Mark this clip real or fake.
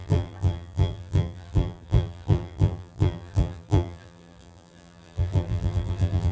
fake